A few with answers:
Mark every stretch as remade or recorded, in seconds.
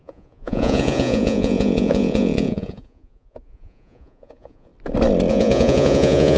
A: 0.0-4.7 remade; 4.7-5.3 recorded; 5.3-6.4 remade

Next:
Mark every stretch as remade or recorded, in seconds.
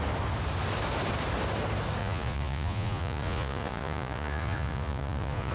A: 0.0-2.0 recorded; 2.0-5.5 remade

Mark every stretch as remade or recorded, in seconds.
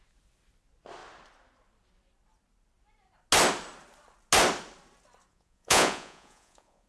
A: 0.0-5.3 recorded; 5.3-6.9 remade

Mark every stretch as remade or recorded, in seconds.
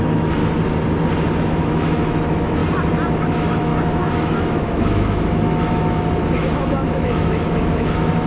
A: 0.0-0.4 remade; 0.4-1.4 recorded; 1.4-2.6 remade; 2.6-3.2 recorded; 3.2-8.3 remade